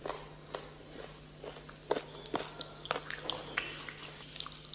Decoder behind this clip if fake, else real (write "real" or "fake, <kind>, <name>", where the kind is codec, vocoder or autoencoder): real